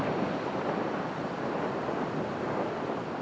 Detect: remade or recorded recorded